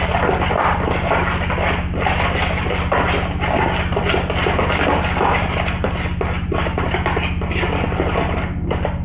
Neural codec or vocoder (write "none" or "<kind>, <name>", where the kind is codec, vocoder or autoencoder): none